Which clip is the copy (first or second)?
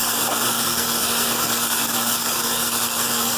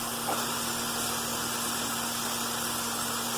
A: first